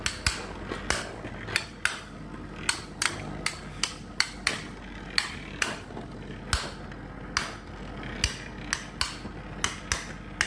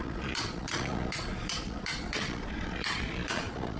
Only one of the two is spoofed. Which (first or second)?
second